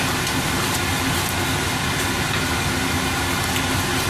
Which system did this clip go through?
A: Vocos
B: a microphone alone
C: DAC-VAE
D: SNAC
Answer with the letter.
B